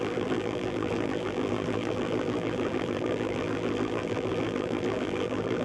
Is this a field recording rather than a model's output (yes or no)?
no